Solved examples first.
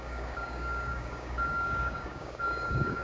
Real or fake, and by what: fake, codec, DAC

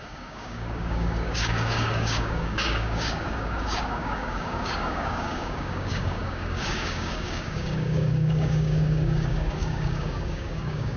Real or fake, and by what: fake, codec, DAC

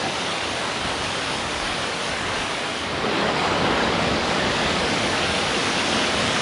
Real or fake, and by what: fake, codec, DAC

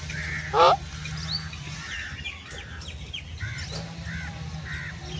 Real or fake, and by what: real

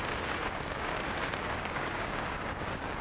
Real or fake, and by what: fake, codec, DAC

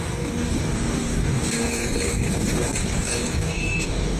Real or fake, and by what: fake, codec, DAC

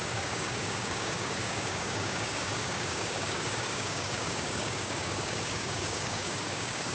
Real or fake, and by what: fake, codec, DAC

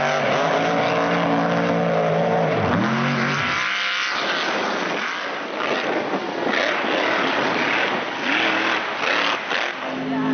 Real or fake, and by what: real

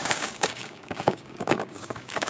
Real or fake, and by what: fake, codec, DAC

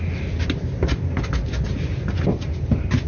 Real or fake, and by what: real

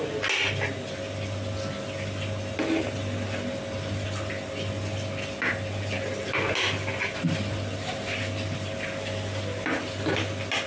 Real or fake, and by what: real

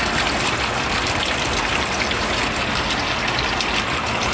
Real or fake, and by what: real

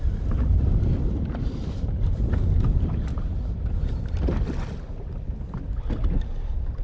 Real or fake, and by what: real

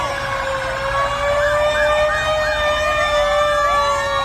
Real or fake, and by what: real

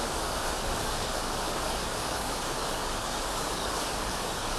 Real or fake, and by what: fake, codec, DAC